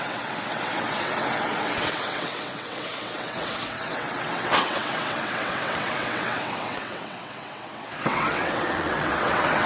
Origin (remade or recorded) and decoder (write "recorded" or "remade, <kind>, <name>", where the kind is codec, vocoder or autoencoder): remade, vocoder, WaveNeXt